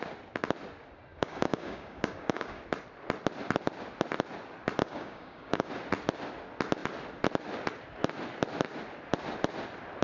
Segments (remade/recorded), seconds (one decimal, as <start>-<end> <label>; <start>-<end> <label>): 0.0-1.1 recorded; 1.1-2.6 remade; 2.6-4.8 recorded; 4.8-5.7 remade; 5.7-10.0 recorded